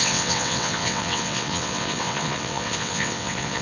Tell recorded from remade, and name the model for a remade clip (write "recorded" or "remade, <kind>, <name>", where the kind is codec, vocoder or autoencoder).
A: remade, vocoder, WaveNeXt